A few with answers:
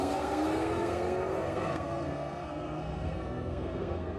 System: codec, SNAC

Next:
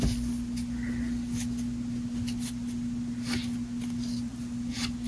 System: none